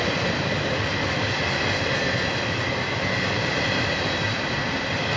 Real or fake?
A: real